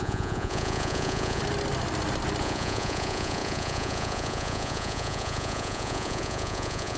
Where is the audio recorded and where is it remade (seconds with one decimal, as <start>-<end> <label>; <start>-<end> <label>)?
0.0-1.4 remade; 1.4-2.4 recorded; 2.4-7.0 remade

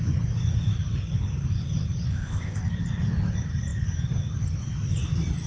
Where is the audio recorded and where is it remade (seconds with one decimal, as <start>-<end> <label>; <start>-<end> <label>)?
0.0-2.1 recorded; 2.1-2.6 remade; 2.6-5.5 recorded

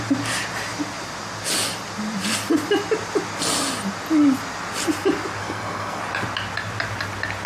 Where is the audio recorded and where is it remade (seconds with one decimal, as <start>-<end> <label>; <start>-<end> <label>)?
0.0-5.4 recorded; 5.4-6.0 remade; 6.0-7.5 recorded

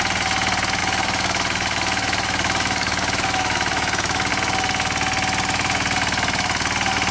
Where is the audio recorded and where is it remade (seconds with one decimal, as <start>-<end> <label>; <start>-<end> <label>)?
0.0-0.8 recorded; 0.8-4.3 remade; 4.3-7.1 recorded

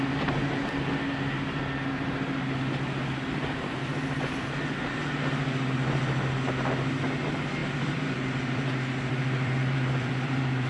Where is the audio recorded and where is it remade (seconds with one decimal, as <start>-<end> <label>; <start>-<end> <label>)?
0.0-7.6 recorded; 7.6-10.7 remade

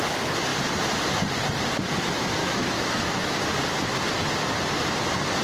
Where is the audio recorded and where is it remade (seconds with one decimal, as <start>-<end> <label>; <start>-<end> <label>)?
0.0-2.4 recorded; 2.4-3.4 remade; 3.4-5.4 recorded

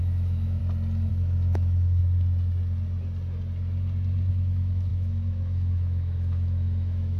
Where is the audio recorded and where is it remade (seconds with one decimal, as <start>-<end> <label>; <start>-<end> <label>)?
0.0-0.6 remade; 0.6-1.1 recorded; 1.1-2.0 remade; 2.0-4.3 recorded; 4.3-7.2 remade